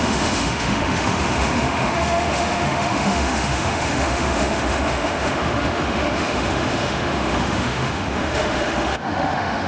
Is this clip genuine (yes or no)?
no